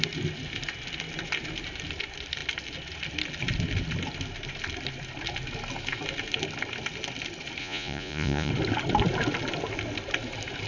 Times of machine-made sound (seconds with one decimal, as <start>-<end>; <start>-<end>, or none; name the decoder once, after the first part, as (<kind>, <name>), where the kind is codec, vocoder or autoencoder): 7.6-8.5 (vocoder, Vocos)